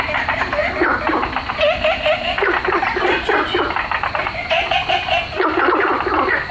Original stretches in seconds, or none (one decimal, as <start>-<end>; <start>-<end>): 0.0-6.5